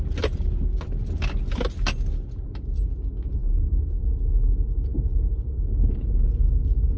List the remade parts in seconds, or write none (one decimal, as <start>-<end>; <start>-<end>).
3.4-4.0